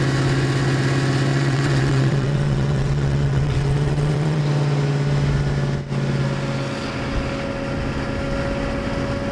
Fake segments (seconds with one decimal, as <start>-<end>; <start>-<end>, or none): 1.3-4.4